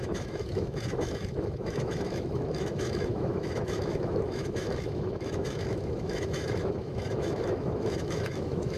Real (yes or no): no